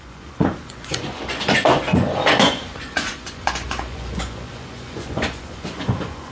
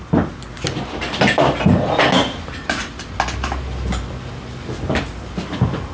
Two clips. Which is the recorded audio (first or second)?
second